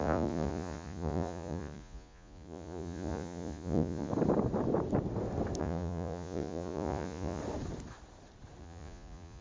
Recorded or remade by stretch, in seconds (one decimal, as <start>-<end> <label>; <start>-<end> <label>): 0.0-4.1 remade; 4.1-5.6 recorded; 5.6-7.4 remade; 7.4-8.6 recorded; 8.6-9.4 remade

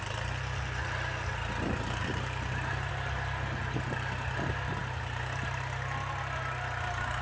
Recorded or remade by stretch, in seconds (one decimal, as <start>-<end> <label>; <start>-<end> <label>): 0.0-7.2 recorded

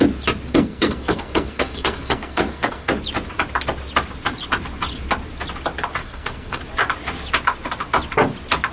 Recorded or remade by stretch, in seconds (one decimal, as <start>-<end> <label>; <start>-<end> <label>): 0.0-0.5 recorded; 0.5-2.9 remade; 2.9-6.0 recorded; 6.0-6.6 remade; 6.6-8.7 recorded

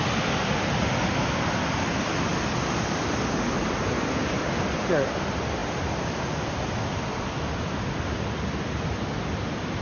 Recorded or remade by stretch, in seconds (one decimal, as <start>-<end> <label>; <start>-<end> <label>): 0.0-9.8 recorded

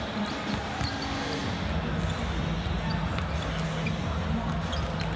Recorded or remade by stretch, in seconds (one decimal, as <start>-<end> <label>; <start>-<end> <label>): 0.0-5.2 recorded

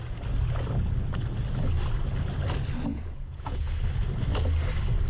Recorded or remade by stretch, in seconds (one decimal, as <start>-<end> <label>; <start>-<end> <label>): 0.0-2.9 recorded; 2.9-3.7 remade; 3.7-5.1 recorded